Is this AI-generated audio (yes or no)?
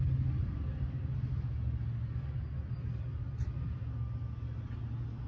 no